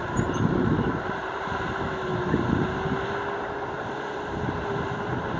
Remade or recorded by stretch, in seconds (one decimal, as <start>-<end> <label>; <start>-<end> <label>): 0.0-2.1 remade; 2.1-3.4 recorded; 3.4-5.4 remade